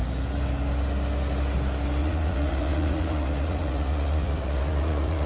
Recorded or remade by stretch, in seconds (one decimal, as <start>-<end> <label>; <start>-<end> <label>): 0.0-2.0 recorded; 2.0-5.3 remade

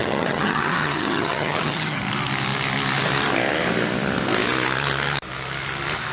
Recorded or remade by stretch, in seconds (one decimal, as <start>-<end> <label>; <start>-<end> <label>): 0.0-2.0 remade; 2.0-6.1 recorded